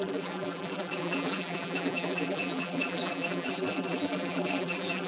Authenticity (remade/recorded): remade